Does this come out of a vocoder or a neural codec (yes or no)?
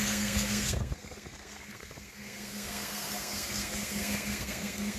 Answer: yes